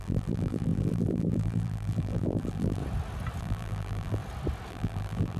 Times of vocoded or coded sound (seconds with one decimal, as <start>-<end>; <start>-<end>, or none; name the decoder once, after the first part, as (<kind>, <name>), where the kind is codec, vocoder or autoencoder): 0.0-2.8 (vocoder, BigVGAN v2); 3.4-4.2; 4.7-5.4